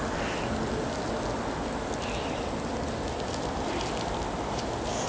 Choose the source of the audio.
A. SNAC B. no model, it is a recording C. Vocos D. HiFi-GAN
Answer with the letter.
B